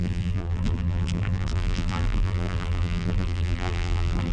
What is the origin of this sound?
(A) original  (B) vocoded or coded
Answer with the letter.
B